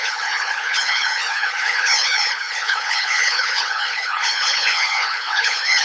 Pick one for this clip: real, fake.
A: fake